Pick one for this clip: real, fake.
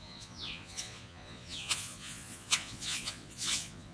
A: fake